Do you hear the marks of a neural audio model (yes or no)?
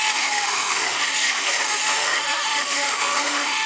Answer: yes